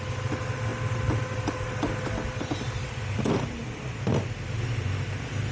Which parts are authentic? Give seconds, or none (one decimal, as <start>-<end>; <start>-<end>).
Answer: 0.0-5.5